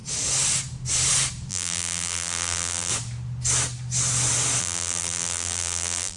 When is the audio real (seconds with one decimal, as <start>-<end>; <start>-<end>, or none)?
0.0-1.5; 2.9-4.6

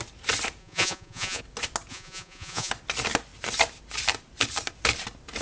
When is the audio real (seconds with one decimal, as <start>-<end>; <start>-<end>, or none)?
0.0-0.6; 1.4-1.9; 2.7-5.4

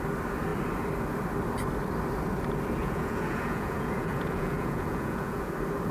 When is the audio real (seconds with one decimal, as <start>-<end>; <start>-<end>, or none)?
0.0-2.8; 5.5-5.9

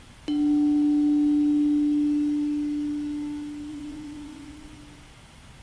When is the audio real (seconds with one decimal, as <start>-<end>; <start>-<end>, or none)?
0.0-3.7; 4.8-5.6